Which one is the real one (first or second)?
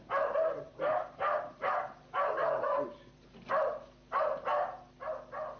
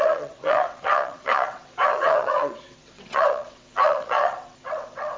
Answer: first